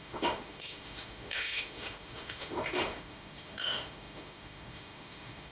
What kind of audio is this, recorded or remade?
remade